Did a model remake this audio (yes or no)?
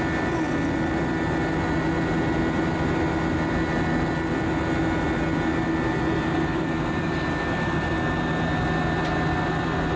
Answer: no